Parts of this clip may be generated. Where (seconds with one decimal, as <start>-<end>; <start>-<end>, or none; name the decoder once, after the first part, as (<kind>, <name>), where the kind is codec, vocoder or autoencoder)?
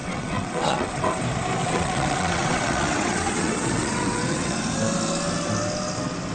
0.0-1.2 (vocoder, WaveNeXt); 1.6-4.6